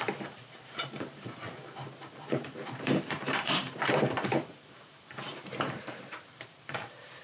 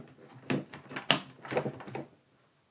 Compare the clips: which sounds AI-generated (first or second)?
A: first